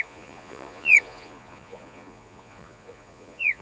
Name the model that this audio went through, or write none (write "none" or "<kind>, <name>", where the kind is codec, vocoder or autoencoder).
vocoder, Vocos